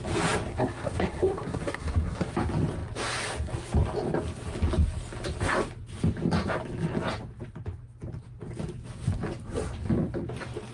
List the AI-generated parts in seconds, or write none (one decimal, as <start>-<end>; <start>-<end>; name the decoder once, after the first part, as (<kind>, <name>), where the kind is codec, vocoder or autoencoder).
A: 0.5-2.3 (codec, SNAC)